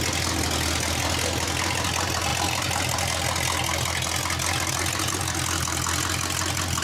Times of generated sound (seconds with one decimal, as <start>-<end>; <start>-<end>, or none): none